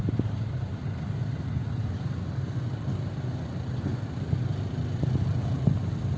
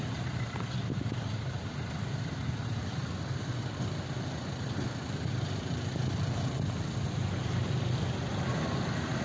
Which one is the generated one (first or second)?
second